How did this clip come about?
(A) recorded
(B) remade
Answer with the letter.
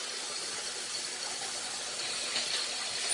B